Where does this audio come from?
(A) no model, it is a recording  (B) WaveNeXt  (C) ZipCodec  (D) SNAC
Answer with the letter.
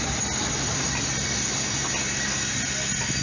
A